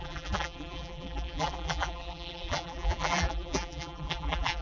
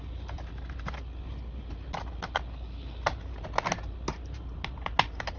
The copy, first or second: first